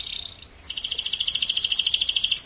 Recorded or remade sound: recorded